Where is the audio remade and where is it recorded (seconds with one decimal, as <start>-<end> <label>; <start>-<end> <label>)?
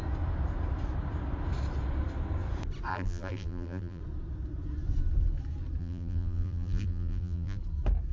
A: 0.0-2.9 recorded; 2.9-4.0 remade; 4.0-5.8 recorded; 5.8-7.6 remade; 7.6-8.1 recorded